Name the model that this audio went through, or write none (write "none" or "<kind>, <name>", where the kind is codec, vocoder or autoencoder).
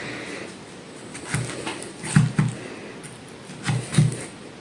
none